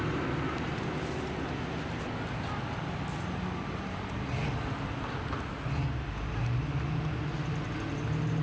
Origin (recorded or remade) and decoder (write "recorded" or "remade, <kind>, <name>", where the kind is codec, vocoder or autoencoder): recorded